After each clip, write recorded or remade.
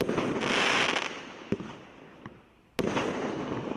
recorded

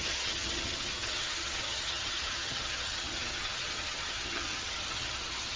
remade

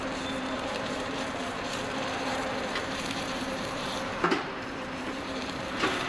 remade